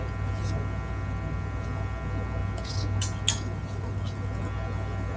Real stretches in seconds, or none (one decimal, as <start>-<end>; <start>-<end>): 0.0-5.2